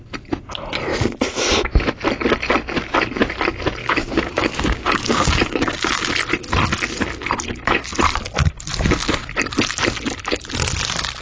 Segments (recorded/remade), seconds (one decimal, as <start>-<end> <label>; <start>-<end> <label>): 0.0-3.8 recorded; 3.8-6.1 remade; 6.1-11.2 recorded